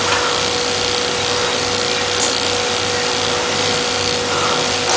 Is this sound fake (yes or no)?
no